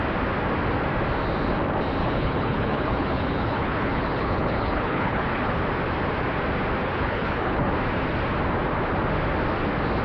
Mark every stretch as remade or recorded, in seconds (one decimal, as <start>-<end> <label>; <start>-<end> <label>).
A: 0.0-2.0 recorded; 2.0-5.6 remade; 5.6-6.8 recorded; 6.8-7.7 remade; 7.7-10.0 recorded